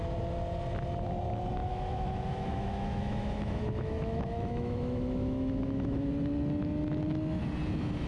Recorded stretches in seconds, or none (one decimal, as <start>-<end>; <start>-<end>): 0.0-1.6; 6.1-8.1